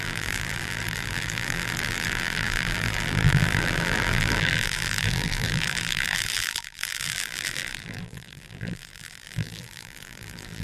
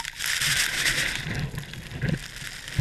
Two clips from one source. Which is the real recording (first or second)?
second